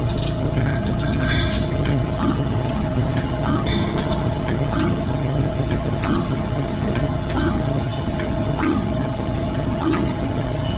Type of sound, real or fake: fake